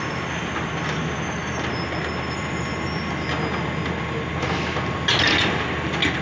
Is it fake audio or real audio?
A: real